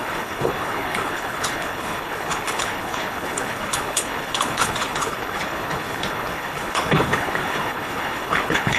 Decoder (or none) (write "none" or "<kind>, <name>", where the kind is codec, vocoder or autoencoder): codec, HILCodec